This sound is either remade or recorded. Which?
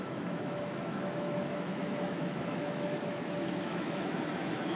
remade